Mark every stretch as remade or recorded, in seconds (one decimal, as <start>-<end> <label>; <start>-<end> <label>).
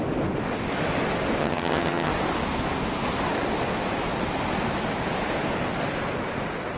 0.0-1.4 recorded; 1.4-2.1 remade; 2.1-6.8 recorded